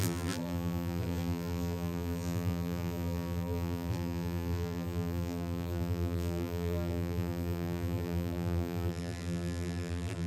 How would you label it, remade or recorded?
remade